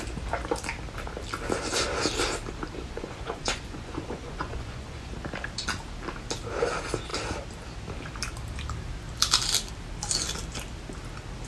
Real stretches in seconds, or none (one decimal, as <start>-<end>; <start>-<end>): 0.0-2.8; 5.1-11.5